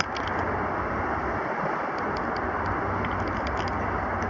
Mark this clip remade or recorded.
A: remade